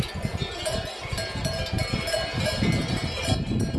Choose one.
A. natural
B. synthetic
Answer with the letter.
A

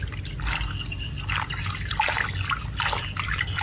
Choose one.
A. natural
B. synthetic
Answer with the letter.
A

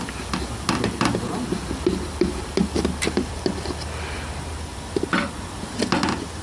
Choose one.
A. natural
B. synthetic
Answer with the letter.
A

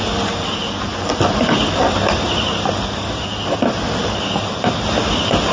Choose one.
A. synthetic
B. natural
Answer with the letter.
B